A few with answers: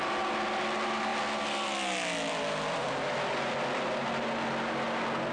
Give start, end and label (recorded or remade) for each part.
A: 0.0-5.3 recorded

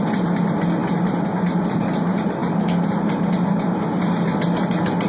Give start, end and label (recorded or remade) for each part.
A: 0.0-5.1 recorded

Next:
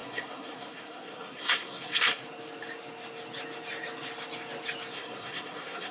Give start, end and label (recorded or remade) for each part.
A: 0.0-2.2 remade; 2.2-4.9 recorded; 4.9-5.9 remade

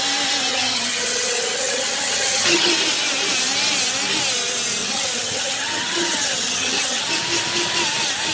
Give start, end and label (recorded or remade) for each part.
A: 0.0-0.5 recorded; 0.5-2.7 remade; 2.7-4.8 recorded; 4.8-7.1 remade; 7.1-8.3 recorded